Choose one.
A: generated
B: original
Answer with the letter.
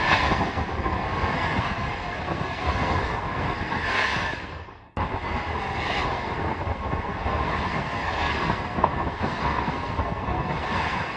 A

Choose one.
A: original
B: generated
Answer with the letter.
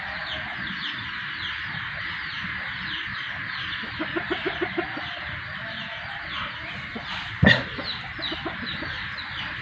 A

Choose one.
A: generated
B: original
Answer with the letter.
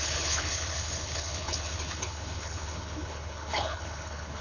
A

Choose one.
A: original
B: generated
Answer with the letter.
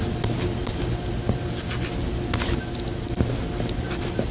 A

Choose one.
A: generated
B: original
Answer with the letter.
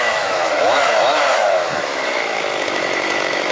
A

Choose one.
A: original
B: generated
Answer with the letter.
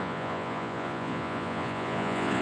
B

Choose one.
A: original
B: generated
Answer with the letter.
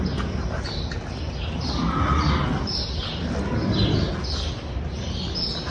A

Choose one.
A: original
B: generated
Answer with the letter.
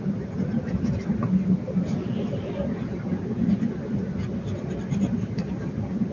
A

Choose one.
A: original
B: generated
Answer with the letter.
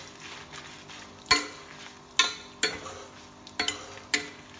A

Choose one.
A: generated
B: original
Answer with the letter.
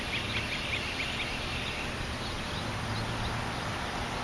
B